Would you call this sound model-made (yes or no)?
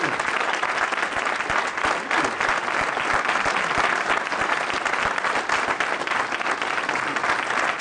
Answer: no